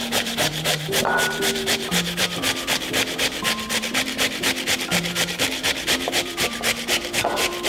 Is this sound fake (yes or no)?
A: yes